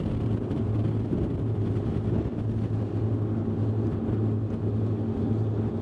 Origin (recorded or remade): recorded